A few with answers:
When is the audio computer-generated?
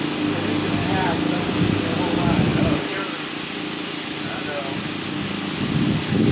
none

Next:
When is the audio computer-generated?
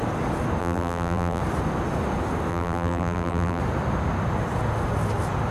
0.6-1.4; 2.5-3.6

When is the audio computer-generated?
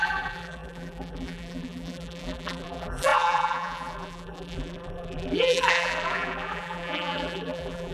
0.0-7.9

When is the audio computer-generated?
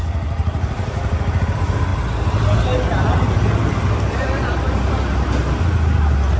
0.0-1.9; 3.3-6.4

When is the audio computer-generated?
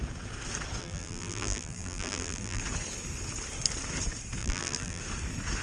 0.8-2.6; 4.4-5.0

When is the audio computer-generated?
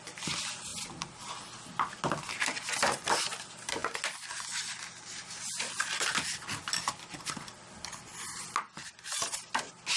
none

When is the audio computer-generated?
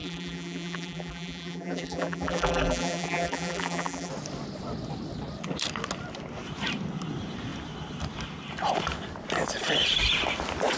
0.0-4.1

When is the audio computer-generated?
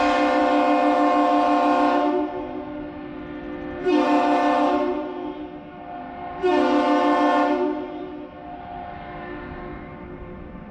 none